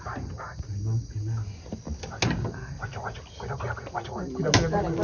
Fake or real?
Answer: real